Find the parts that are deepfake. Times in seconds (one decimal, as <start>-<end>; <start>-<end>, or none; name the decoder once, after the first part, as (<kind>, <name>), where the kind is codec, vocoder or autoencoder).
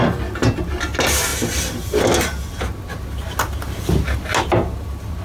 none